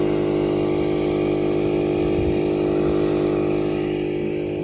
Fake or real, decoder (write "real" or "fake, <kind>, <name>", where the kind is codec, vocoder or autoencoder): real